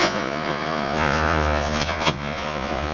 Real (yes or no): no